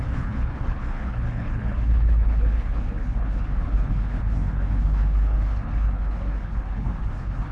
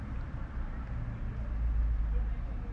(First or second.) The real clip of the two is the second